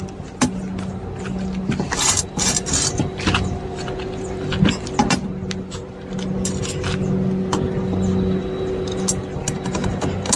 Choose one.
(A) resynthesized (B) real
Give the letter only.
B